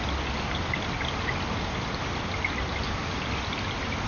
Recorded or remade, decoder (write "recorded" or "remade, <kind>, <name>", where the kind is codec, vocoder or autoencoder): recorded